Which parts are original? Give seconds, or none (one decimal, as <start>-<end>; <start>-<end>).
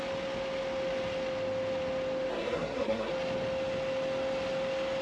0.0-2.3; 3.1-5.0